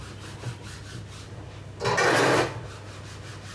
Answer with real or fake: real